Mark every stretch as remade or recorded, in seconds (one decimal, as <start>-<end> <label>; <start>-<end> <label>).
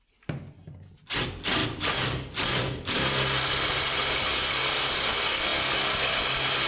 0.0-1.6 recorded; 1.6-4.6 remade; 4.6-6.7 recorded